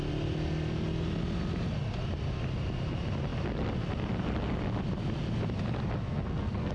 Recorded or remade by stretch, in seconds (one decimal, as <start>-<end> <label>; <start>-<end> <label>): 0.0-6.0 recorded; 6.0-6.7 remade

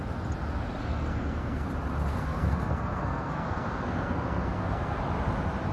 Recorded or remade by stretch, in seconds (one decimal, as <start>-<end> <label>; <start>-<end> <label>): 0.0-0.8 recorded; 0.8-1.7 remade; 1.7-2.1 recorded; 2.1-5.0 remade; 5.0-5.7 recorded

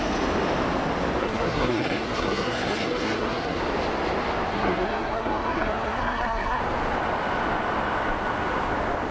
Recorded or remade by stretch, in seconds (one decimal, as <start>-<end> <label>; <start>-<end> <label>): 0.0-1.2 recorded; 1.2-3.6 remade; 3.6-4.5 recorded; 4.5-6.6 remade; 6.6-9.1 recorded